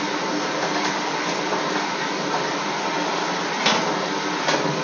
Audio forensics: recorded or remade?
recorded